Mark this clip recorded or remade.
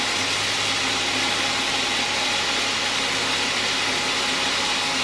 recorded